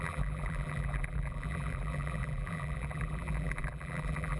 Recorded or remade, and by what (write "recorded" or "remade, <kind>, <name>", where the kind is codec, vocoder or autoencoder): remade, vocoder, BigVGAN v2